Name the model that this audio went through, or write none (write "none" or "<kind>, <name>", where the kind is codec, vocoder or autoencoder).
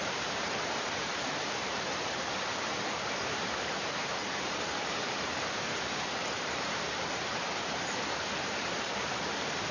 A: vocoder, BigVGAN v2